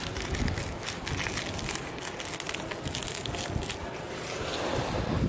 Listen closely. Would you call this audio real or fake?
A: real